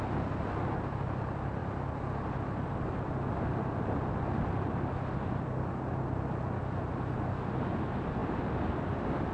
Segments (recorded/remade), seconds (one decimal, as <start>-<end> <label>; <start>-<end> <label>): 0.0-9.3 recorded